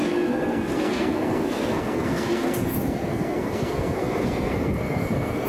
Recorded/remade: remade